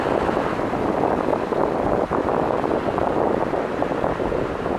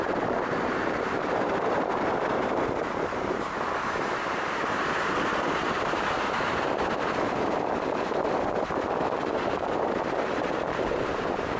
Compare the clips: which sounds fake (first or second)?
second